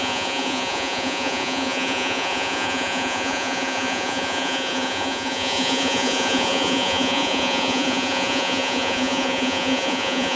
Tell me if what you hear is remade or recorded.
remade